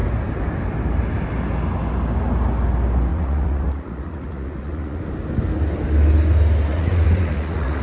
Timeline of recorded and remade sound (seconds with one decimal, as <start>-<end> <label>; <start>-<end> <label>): 0.0-3.1 recorded; 3.1-5.0 remade; 5.0-6.7 recorded; 6.7-7.8 remade